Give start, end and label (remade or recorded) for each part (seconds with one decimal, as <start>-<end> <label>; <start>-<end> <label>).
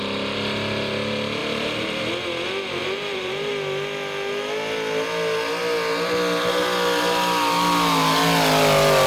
0.0-1.4 recorded; 1.4-2.0 remade; 2.0-2.8 recorded; 2.8-3.5 remade; 3.5-9.1 recorded